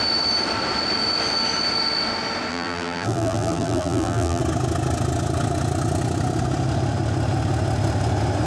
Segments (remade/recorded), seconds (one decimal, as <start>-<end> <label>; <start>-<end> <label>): 0.0-2.5 recorded; 2.5-4.4 remade; 4.4-8.5 recorded

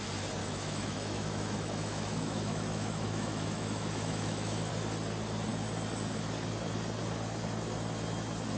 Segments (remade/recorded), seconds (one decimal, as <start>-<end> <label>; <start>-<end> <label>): 0.0-0.4 recorded; 0.4-4.7 remade; 4.7-8.6 recorded

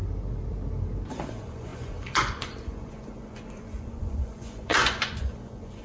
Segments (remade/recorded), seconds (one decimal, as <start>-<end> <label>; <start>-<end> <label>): 0.0-1.1 recorded; 1.1-5.8 remade

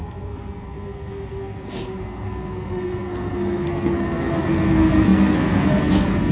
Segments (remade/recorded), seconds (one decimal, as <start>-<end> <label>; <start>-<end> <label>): 0.0-6.3 remade

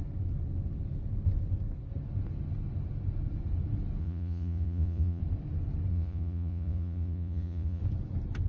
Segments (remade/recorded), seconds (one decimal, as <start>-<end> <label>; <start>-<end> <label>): 0.0-4.0 recorded; 4.0-5.2 remade; 5.2-5.9 recorded; 5.9-7.8 remade; 7.8-8.5 recorded